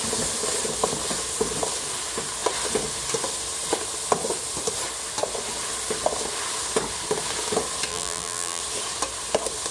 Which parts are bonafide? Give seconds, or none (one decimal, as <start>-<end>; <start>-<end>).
0.0-7.9; 8.6-9.7